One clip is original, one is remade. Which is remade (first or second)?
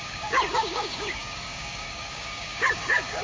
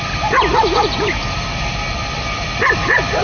first